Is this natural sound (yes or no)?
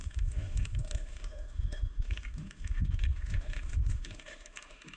no